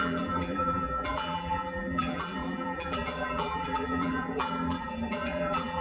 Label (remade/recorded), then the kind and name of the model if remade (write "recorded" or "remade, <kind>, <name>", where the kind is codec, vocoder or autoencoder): remade, vocoder, BigVGAN v2